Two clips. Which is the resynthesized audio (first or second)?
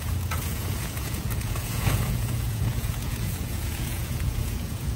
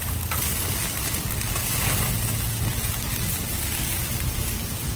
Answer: first